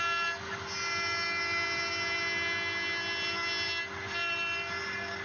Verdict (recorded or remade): recorded